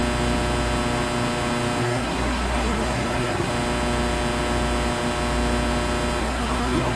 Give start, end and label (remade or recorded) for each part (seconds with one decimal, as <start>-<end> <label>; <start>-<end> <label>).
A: 0.0-1.8 recorded; 1.8-3.5 remade; 3.5-6.2 recorded; 6.2-7.0 remade